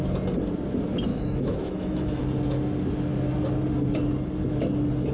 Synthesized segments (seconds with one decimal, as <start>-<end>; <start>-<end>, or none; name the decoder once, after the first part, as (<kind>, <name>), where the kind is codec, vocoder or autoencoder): 1.1-2.2 (autoencoder, DAC-VAE)